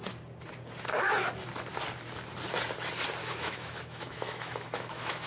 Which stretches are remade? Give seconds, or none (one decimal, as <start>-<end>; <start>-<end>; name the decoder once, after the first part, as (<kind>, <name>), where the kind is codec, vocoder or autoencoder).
3.2-5.3 (autoencoder, DAC-VAE)